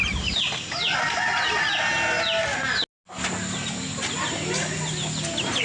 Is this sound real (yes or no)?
yes